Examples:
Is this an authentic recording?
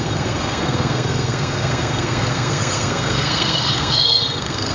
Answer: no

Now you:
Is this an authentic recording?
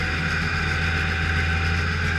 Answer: yes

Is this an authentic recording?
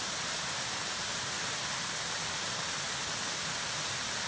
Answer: yes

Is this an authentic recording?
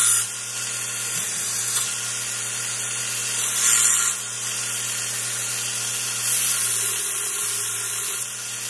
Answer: yes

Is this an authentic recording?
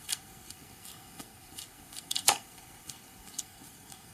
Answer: no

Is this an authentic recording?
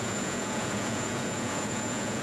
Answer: no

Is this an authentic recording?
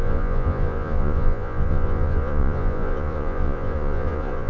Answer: no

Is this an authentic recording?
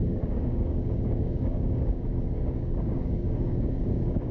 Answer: no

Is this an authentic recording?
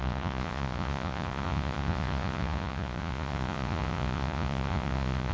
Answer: no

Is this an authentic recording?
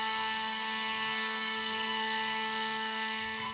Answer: no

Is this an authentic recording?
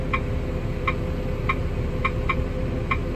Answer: yes